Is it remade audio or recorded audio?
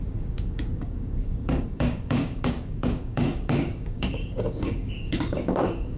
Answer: remade